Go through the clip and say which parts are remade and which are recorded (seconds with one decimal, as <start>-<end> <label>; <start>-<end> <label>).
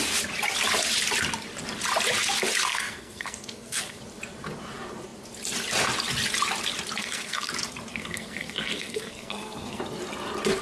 0.0-2.7 recorded; 2.7-4.0 remade; 4.0-7.0 recorded; 7.0-7.5 remade; 7.5-7.9 recorded; 7.9-9.8 remade; 9.8-10.6 recorded